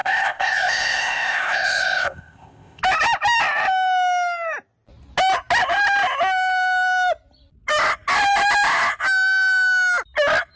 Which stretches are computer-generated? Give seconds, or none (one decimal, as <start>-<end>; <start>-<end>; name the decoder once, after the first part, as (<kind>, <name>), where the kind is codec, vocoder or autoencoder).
0.0-2.8 (codec, ZipCodec)